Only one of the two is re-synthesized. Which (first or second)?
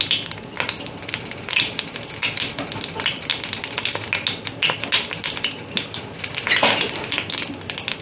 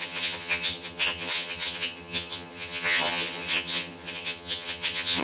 second